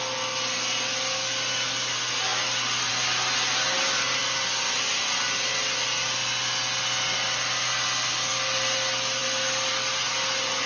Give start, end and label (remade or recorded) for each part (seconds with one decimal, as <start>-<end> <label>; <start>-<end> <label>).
0.0-10.7 recorded